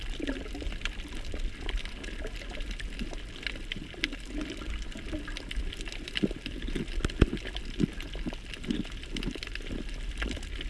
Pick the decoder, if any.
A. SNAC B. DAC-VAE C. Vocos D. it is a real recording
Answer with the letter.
D